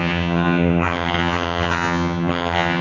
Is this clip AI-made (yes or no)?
yes